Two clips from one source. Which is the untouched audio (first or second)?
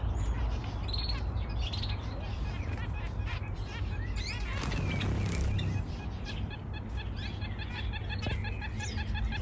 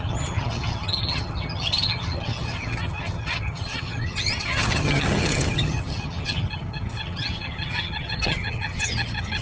first